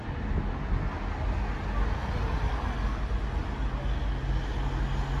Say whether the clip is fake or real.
real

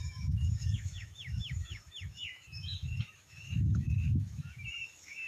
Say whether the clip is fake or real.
fake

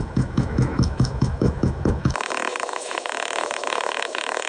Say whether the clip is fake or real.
fake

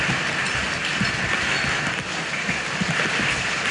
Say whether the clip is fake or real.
real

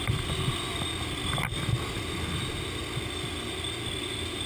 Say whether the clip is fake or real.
real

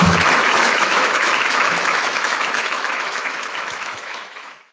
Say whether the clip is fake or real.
fake